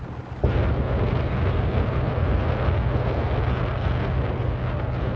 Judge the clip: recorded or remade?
recorded